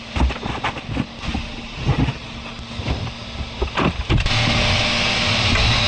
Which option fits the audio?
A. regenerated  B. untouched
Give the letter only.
B